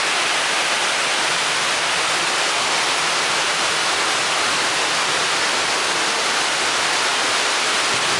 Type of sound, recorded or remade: recorded